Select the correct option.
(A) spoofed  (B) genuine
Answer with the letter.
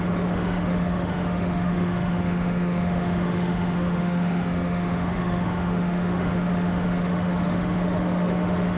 A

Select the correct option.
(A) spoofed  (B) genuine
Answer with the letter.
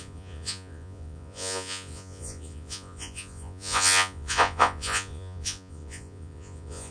A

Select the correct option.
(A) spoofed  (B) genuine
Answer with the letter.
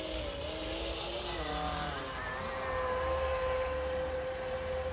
B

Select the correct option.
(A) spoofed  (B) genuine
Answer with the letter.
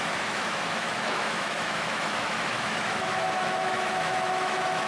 A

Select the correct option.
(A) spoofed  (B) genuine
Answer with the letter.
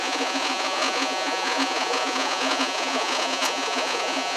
A